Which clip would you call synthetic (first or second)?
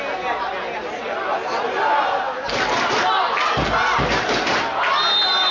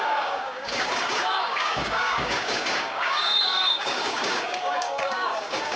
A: second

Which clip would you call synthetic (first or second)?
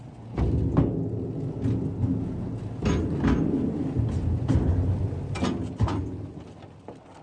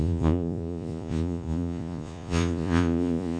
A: second